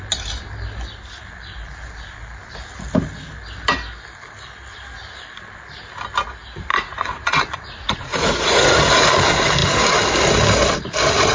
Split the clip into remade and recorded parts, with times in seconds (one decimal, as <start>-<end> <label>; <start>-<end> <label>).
0.0-6.7 recorded; 6.7-8.8 remade; 8.8-11.3 recorded